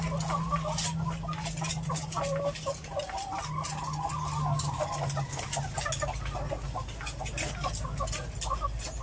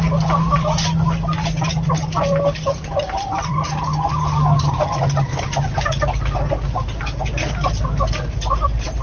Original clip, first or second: first